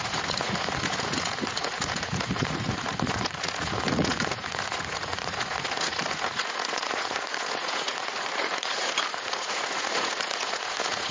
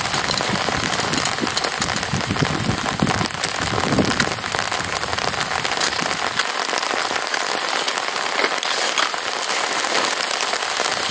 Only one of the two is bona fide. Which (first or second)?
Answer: second